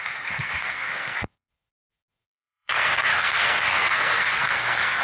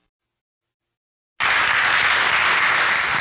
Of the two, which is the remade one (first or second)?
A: first